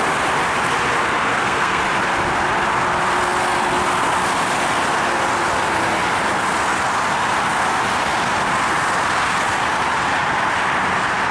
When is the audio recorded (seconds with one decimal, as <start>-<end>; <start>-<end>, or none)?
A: 0.0-1.3; 1.8-11.3